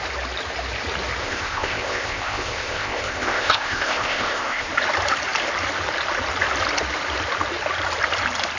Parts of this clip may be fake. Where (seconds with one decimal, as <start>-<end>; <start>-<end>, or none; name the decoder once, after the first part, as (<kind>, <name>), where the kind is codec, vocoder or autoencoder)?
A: 1.2-4.7 (codec, ZipCodec)